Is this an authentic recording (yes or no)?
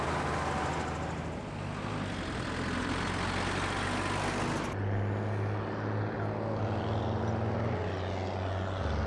yes